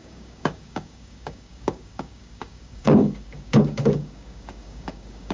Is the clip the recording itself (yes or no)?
no